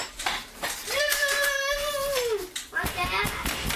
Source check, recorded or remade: recorded